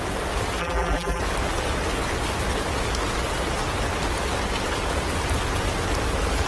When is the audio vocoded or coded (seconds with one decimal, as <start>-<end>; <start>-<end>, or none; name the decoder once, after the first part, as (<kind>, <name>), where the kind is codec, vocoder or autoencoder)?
0.6-1.2 (vocoder, BigVGAN v2)